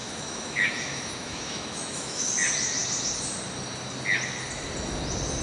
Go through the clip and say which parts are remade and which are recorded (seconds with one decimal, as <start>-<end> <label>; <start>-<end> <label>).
0.0-2.3 remade; 2.3-5.4 recorded